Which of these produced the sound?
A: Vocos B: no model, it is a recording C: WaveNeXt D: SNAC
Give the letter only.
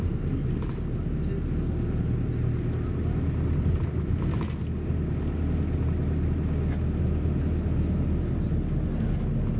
B